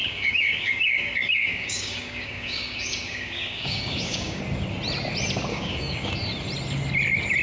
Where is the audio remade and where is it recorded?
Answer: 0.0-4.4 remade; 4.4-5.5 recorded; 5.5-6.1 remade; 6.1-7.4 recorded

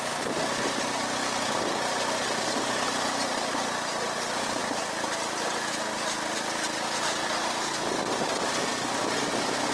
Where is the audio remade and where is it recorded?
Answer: 0.0-9.7 recorded

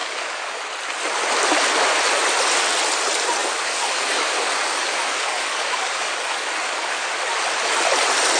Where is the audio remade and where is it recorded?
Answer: 0.0-0.6 remade; 0.6-3.4 recorded; 3.4-7.1 remade; 7.1-8.4 recorded

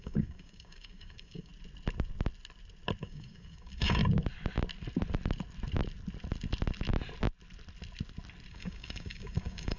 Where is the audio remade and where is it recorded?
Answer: 0.0-1.5 remade; 1.5-3.0 recorded; 3.0-4.0 remade; 4.0-8.5 recorded; 8.5-9.8 remade

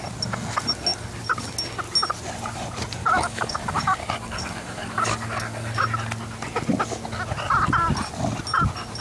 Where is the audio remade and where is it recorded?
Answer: 0.0-3.0 recorded; 3.0-5.8 remade; 5.8-9.0 recorded